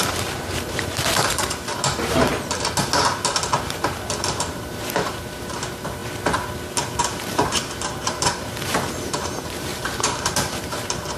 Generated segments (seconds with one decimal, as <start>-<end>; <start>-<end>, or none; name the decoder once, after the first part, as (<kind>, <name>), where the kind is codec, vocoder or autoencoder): 0.0-2.3 (vocoder, BigVGAN v2); 3.7-6.0; 7.0-11.2